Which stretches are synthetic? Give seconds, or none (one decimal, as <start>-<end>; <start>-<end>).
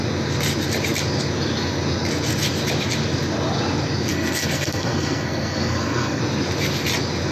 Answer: 4.1-6.2